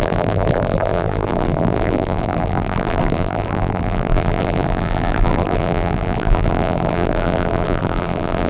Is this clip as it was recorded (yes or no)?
no